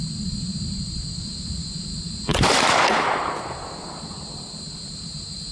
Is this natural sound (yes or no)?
no